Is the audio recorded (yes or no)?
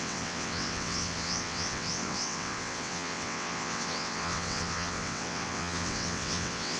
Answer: no